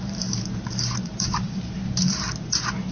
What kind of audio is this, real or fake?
fake